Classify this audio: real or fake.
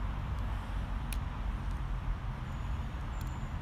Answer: real